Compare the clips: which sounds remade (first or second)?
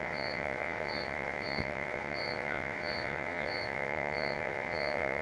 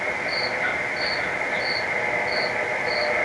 first